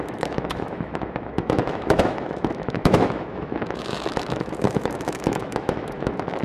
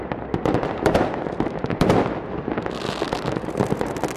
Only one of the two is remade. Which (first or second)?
first